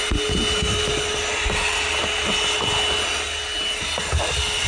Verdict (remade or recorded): recorded